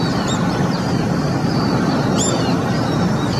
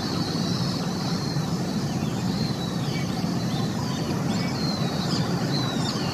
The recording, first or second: first